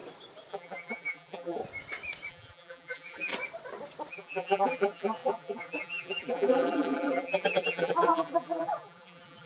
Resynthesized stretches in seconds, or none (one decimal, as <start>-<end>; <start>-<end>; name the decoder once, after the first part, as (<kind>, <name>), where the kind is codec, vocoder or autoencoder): 0.5-1.6 (vocoder, BigVGAN v2); 2.3-3.3; 4.1-9.5